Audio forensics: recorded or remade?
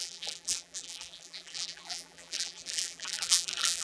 remade